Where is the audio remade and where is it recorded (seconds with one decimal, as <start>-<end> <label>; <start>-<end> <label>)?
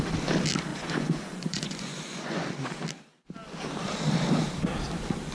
0.0-0.7 recorded; 0.7-2.5 remade; 2.5-5.3 recorded